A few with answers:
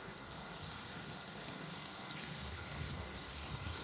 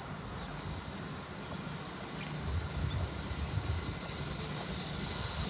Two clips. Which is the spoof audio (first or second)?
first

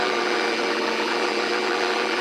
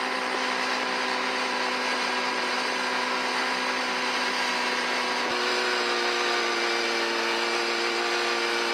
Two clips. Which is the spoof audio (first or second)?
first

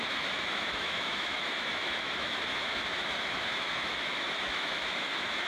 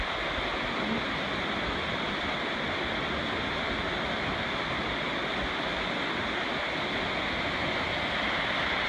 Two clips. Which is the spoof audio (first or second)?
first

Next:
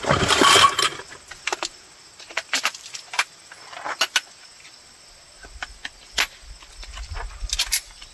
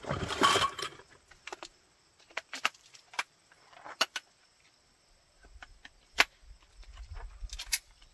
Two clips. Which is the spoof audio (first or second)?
second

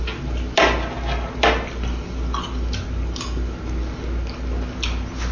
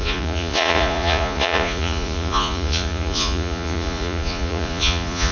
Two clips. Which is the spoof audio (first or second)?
second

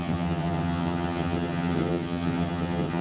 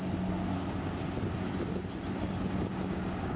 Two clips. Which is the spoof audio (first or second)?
first